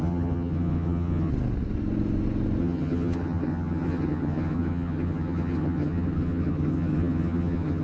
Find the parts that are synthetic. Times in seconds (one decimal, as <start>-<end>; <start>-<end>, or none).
0.0-1.3; 2.6-7.8